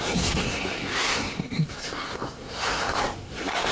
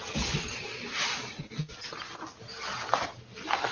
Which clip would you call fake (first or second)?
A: first